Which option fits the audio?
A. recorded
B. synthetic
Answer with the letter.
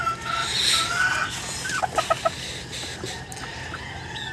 A